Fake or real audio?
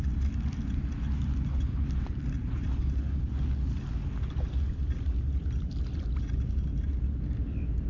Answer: real